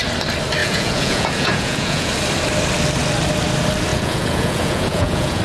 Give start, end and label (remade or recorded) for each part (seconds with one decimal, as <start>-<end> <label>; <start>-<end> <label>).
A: 0.0-0.6 recorded; 0.6-2.1 remade; 2.1-3.9 recorded; 3.9-5.4 remade

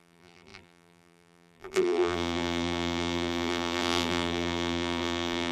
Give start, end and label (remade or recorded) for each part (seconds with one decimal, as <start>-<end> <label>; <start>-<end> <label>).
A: 0.0-5.5 remade

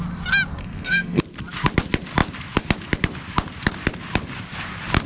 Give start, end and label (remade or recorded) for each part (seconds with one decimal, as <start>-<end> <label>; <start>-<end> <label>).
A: 0.0-0.6 recorded; 0.6-1.2 remade; 1.2-5.1 recorded